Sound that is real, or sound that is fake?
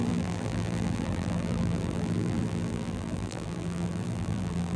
fake